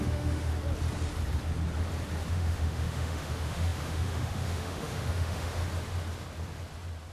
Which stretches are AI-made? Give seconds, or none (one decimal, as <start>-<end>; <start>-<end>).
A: 0.0-0.5; 2.3-5.6